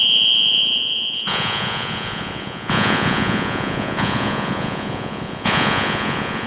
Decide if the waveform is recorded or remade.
remade